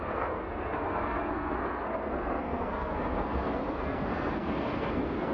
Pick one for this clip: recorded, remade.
remade